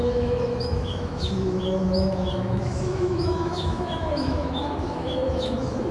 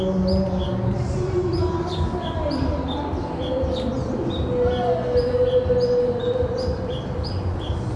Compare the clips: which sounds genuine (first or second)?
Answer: second